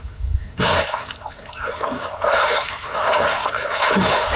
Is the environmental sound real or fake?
fake